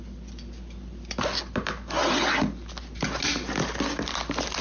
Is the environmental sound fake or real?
real